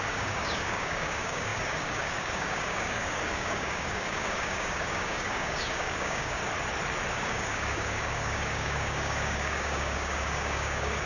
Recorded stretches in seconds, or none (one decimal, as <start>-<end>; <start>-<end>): 6.4-7.1